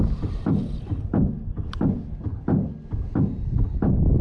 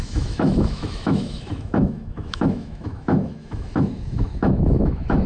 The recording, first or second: first